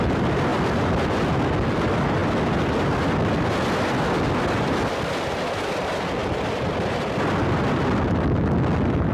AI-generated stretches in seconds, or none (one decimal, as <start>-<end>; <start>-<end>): 0.5-1.1; 6.2-7.0